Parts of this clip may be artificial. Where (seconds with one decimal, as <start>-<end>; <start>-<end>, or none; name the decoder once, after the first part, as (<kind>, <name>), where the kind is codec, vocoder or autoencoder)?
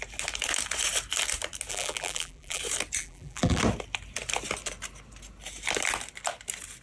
1.7-2.6 (vocoder, BigVGAN v2); 3.0-3.6